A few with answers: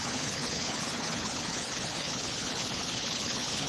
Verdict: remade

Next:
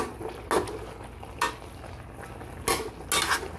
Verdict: recorded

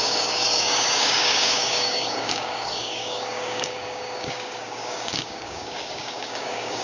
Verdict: remade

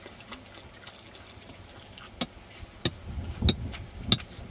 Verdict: recorded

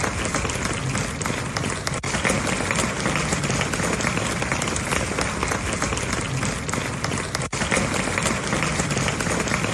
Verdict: recorded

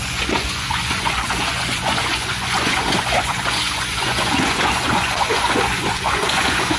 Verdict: remade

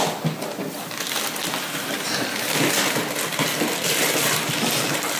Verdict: recorded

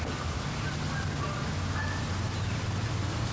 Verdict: recorded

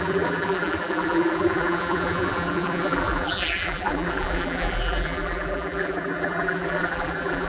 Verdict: remade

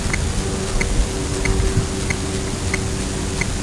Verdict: recorded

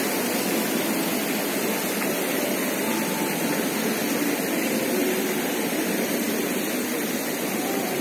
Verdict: recorded